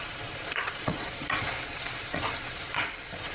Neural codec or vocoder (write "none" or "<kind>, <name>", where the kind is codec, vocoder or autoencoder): vocoder, Vocos